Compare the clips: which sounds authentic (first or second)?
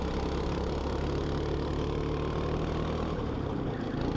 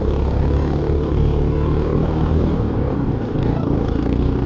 first